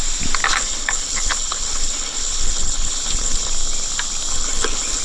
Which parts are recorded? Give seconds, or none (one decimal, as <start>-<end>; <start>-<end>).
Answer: 0.0-0.5; 3.5-4.3